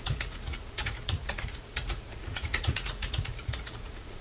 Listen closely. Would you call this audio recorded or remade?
remade